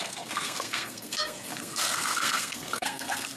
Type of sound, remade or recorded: remade